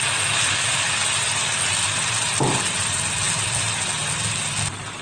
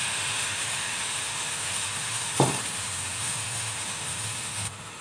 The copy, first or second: second